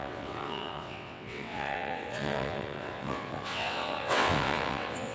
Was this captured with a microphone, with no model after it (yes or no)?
no